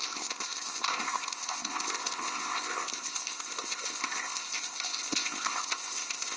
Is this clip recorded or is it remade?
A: remade